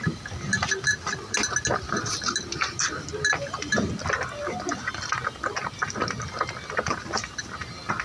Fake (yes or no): no